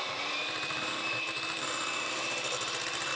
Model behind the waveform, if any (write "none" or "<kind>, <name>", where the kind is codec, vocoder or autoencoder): vocoder, BigVGAN v2